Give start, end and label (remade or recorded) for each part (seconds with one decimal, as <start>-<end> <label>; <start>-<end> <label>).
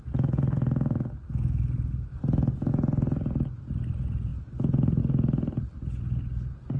0.0-6.8 recorded